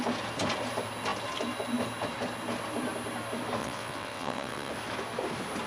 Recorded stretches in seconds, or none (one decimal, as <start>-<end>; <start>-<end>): 0.0-3.6; 4.7-5.7